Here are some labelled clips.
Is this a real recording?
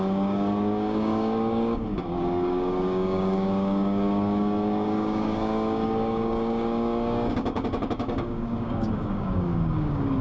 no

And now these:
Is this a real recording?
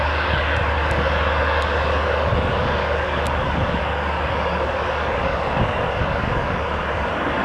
no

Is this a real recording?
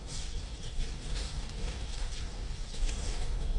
no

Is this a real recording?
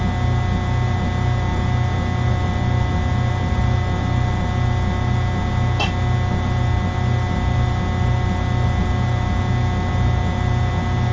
yes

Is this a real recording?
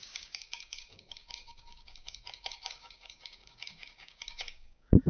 no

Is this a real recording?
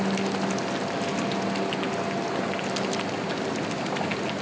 yes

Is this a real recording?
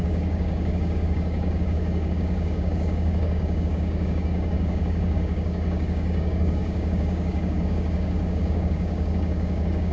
no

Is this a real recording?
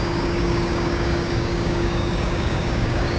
no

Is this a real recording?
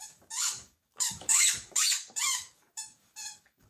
no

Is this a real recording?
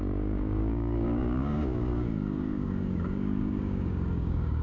no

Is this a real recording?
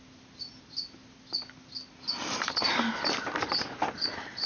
yes